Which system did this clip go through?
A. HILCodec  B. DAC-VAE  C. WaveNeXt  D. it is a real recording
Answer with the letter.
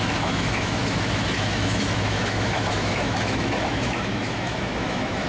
B